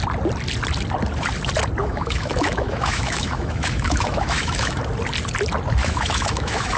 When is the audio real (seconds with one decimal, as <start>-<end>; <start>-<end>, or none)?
0.0-1.8; 4.8-5.8